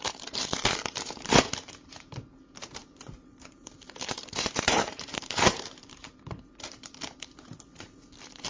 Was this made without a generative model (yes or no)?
no